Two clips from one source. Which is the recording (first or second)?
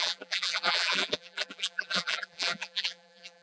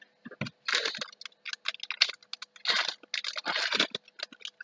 second